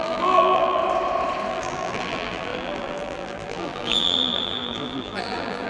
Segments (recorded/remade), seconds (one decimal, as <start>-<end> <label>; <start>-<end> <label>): 0.0-0.8 remade; 0.8-1.5 recorded; 1.5-5.7 remade